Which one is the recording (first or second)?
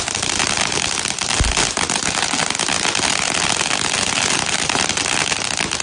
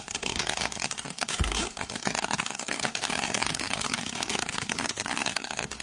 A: first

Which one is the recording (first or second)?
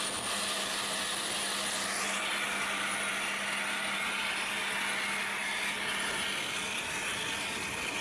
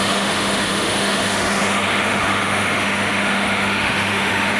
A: first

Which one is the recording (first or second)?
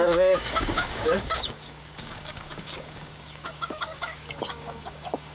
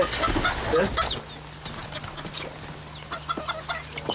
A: second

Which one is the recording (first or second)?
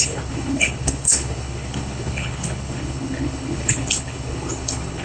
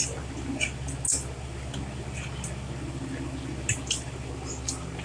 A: second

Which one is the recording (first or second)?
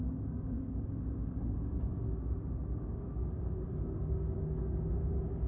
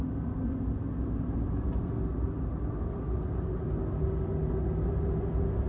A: second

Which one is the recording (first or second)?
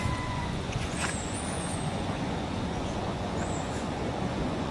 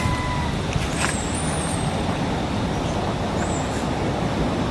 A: second